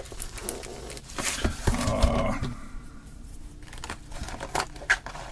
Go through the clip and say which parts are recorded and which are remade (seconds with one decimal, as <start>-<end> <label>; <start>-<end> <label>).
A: 0.0-0.4 remade; 0.4-1.0 recorded; 1.0-4.2 remade; 4.2-5.3 recorded